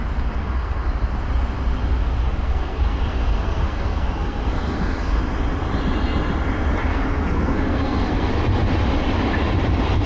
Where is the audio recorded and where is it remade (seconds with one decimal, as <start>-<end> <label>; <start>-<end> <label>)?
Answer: 0.0-0.4 recorded; 0.4-0.9 remade; 0.9-2.0 recorded; 2.0-5.2 remade; 5.2-6.9 recorded; 6.9-8.3 remade; 8.3-10.1 recorded